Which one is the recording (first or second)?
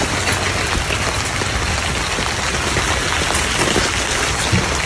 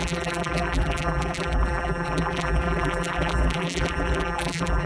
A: first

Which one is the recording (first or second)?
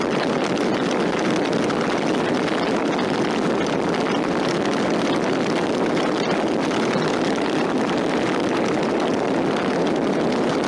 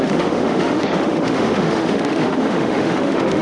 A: first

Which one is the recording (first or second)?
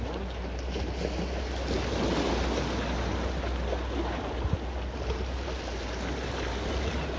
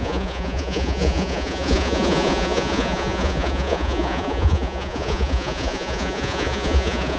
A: first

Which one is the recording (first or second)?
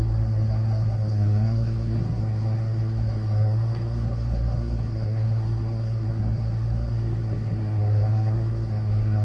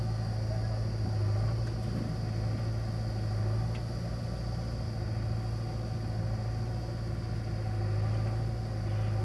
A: second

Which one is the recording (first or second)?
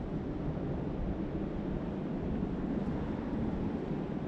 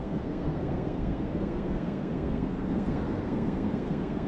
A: first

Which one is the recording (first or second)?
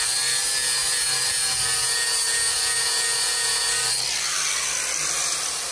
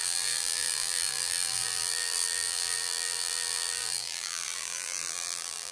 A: first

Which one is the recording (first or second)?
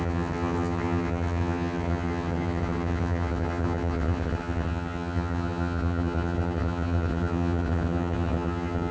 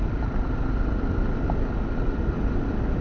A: second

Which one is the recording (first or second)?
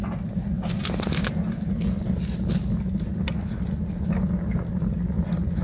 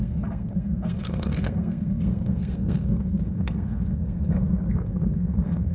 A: first